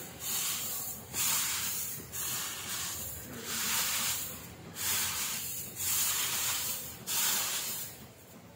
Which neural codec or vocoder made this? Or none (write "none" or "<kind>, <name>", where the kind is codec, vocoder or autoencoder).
vocoder, BigVGAN v2